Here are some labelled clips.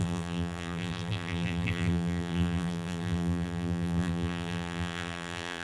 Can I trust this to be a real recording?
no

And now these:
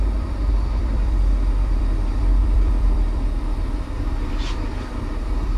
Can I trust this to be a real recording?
no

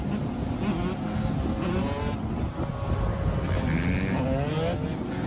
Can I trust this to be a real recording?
yes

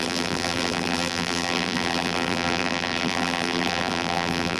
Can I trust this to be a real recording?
no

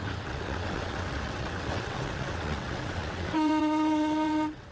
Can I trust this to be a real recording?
no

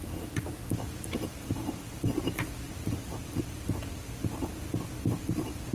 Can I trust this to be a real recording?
yes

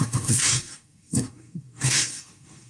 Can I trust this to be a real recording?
no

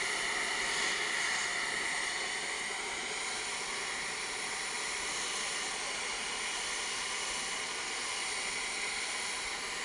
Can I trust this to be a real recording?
yes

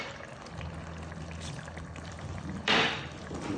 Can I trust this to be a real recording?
no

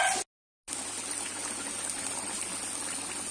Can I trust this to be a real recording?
yes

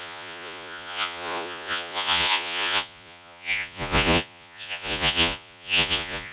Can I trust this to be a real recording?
no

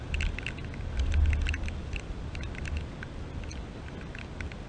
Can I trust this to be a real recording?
yes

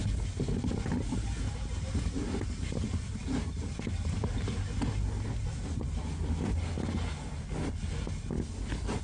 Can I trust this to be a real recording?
yes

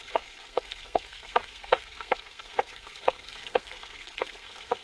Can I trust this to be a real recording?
no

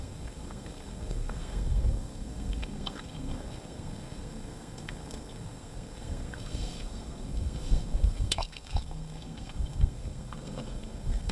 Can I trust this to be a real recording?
no